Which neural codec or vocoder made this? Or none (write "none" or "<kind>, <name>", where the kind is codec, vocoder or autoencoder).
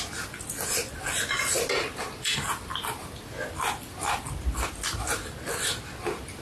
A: none